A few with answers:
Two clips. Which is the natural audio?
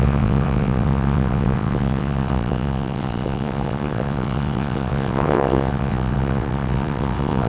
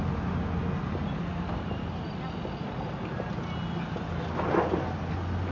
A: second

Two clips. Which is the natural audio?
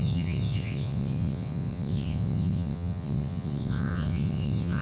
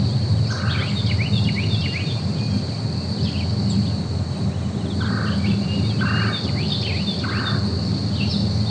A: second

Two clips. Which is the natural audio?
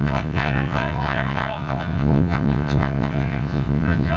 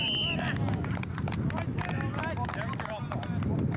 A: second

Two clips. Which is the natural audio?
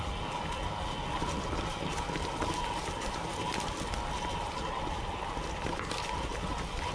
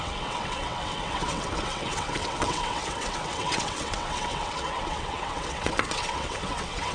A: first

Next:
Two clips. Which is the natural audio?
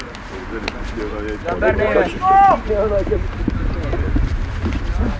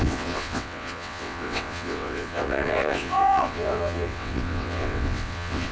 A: first